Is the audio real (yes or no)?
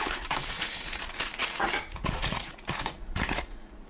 no